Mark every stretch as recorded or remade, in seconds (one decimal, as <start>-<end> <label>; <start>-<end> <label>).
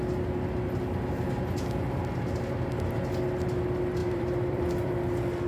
0.0-4.0 recorded; 4.0-4.9 remade; 4.9-5.5 recorded